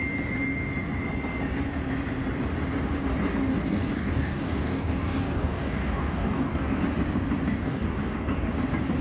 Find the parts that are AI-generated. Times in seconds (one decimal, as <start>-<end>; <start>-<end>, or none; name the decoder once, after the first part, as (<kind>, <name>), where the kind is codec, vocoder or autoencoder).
3.5-6.8 (codec, DAC); 7.6-8.5